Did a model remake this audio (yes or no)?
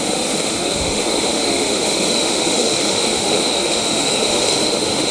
yes